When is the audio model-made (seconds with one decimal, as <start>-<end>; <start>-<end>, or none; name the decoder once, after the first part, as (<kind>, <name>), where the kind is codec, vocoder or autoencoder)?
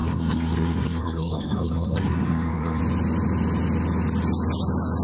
0.0-2.8 (codec, SNAC)